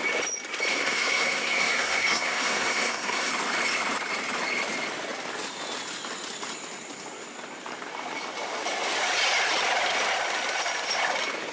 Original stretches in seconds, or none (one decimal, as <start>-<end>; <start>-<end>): 0.0-0.7; 3.3-11.5